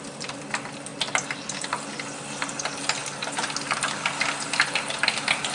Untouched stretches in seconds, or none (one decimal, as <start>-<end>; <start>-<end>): 0.0-5.5